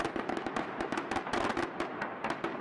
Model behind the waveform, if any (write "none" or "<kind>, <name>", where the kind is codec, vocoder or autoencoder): none